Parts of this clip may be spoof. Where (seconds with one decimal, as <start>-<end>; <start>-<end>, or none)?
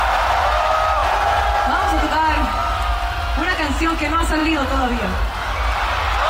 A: 1.0-2.1; 2.6-3.2; 4.4-5.2